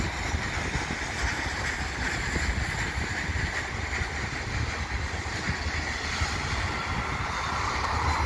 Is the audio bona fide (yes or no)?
yes